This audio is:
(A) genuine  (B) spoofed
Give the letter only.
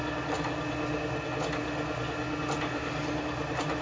A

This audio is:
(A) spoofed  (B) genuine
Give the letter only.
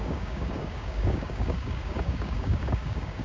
A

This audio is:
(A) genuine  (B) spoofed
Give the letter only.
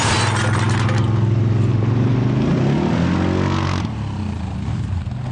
A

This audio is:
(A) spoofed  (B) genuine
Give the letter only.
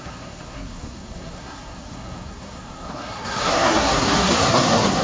A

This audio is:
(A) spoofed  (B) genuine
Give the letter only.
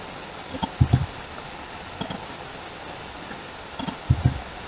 B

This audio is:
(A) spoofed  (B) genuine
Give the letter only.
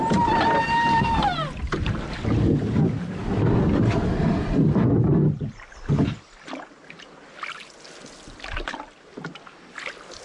B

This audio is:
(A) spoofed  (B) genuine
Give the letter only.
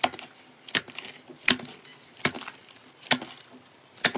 A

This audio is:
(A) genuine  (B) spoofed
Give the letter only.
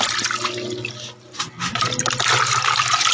A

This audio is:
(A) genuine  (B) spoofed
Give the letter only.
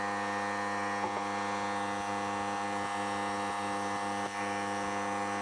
A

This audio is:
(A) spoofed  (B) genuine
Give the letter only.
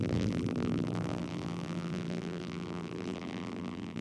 A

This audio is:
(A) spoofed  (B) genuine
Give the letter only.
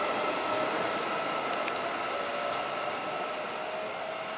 B